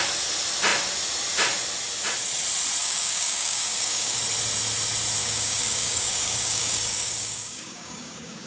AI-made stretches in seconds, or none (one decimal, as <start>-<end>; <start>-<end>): 2.8-4.2; 5.2-8.5